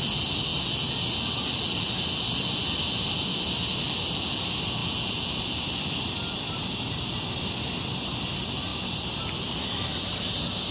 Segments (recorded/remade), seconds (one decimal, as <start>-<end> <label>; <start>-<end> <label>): 0.0-10.7 recorded